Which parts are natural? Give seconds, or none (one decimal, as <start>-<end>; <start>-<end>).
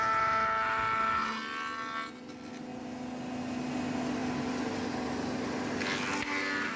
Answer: 0.0-6.8